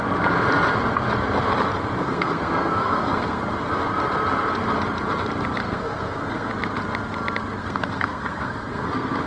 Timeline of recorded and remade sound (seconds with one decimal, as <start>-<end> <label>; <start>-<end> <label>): 0.0-2.0 recorded; 2.0-3.4 remade; 3.4-5.6 recorded; 5.6-6.5 remade; 6.5-7.6 recorded; 7.6-9.3 remade